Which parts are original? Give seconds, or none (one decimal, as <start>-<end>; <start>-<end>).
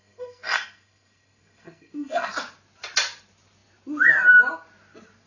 2.3-5.3